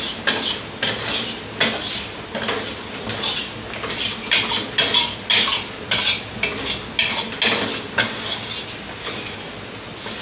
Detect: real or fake real